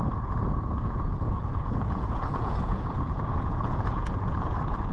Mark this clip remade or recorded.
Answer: remade